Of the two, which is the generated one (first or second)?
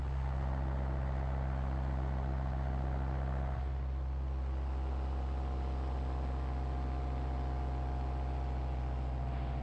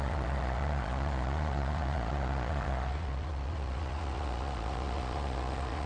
second